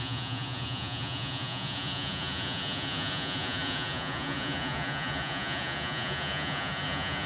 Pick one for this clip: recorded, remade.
remade